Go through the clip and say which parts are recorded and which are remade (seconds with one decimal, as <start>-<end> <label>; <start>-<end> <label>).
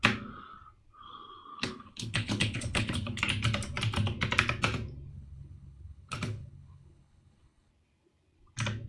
0.0-1.5 recorded; 1.5-3.2 remade; 3.2-5.1 recorded; 5.1-7.7 remade; 7.7-8.9 recorded